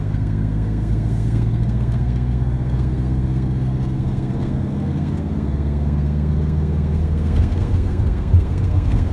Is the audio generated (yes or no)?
yes